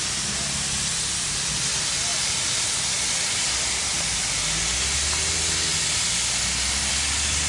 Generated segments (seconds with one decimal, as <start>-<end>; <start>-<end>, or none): 2.1-2.7